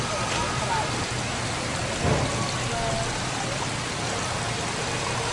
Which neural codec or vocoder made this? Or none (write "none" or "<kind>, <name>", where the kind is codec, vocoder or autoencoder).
none